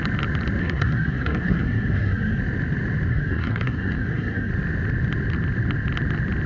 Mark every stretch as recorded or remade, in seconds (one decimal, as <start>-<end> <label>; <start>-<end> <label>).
0.0-0.6 recorded; 0.6-2.4 remade; 2.4-3.1 recorded; 3.1-4.5 remade; 4.5-6.5 recorded